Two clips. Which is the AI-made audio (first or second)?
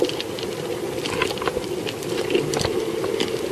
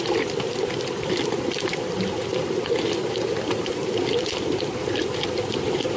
second